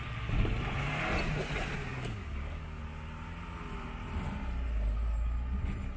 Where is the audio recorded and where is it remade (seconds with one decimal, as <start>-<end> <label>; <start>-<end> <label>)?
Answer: 0.0-1.9 recorded; 1.9-2.8 remade; 2.8-6.0 recorded